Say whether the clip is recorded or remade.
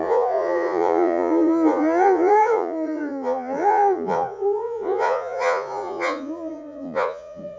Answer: remade